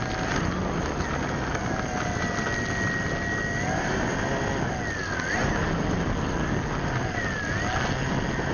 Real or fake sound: real